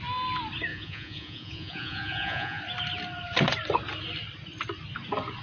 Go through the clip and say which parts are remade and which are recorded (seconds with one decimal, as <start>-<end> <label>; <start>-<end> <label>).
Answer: 0.0-0.7 recorded; 0.7-2.6 remade; 2.6-5.4 recorded